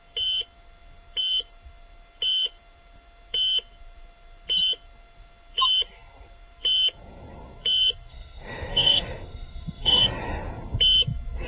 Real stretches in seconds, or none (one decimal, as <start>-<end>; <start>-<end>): 0.0-8.1; 10.0-11.5